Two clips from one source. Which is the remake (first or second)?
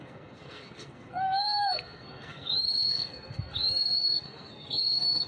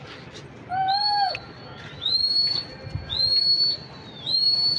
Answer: first